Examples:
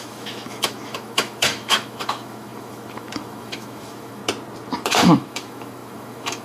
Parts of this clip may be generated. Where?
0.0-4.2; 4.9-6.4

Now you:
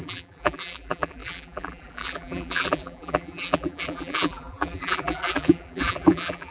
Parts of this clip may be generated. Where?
0.0-6.5

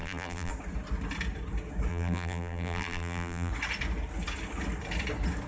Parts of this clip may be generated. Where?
0.0-0.5; 1.9-3.5